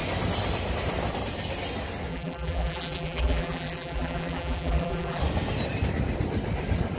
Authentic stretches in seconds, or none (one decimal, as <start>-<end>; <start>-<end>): 0.0-2.1; 5.2-7.0

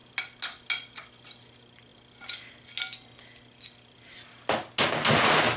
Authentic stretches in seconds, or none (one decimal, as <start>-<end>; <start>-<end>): 0.0-5.6

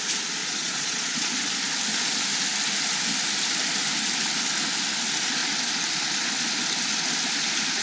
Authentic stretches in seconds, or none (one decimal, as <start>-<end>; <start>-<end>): 0.0-0.4; 1.3-7.8

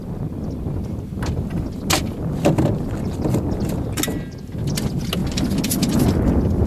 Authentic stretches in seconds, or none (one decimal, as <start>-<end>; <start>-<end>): 0.0-6.7

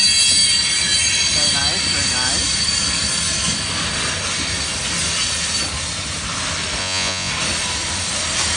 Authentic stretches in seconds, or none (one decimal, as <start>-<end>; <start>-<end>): 0.0-6.8; 7.3-8.6

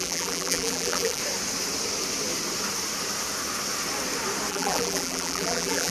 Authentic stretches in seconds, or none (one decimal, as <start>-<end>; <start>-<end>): 1.2-4.5